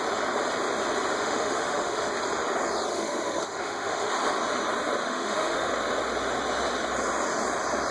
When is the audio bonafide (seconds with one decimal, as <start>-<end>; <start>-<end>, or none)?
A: 0.0-1.2; 2.1-2.9; 4.1-5.0; 5.7-7.9